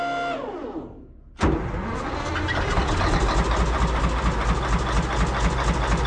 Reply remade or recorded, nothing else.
recorded